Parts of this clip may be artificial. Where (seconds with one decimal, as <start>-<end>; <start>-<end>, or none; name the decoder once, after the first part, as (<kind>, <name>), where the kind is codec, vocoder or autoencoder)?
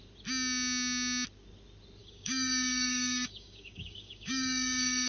2.0-5.1 (codec, DAC)